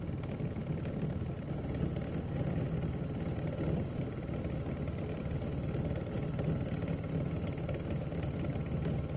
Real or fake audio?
real